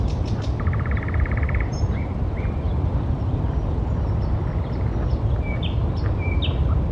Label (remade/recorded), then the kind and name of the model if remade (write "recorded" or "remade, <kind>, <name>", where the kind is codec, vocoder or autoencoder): recorded